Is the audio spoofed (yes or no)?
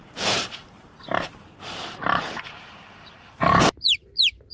yes